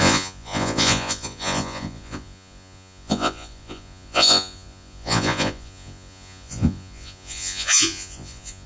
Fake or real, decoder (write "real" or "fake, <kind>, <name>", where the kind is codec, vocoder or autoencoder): fake, vocoder, Vocos